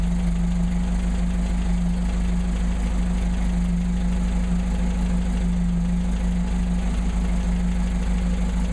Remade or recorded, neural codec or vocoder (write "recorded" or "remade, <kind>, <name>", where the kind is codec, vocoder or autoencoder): recorded